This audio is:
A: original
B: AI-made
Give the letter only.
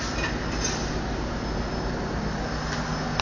A